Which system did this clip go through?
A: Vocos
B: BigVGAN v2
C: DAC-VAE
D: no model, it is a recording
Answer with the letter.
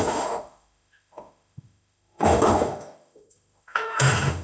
C